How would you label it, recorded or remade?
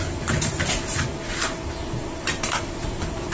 recorded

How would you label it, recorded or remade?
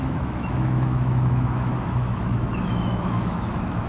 remade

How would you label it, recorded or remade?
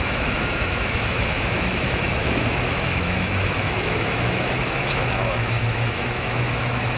remade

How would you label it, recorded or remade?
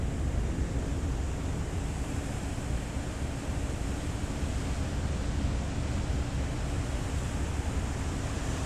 recorded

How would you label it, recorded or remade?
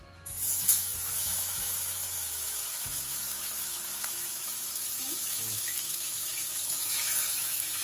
remade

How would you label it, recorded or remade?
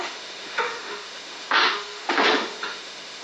remade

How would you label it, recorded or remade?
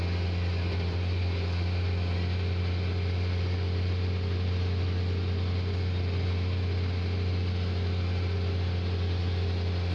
recorded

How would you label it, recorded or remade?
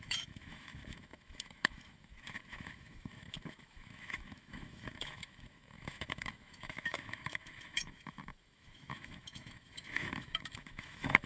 remade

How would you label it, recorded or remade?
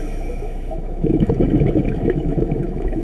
remade